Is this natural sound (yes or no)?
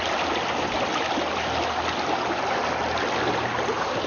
yes